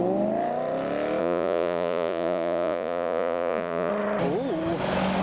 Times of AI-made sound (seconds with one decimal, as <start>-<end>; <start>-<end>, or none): 1.2-3.9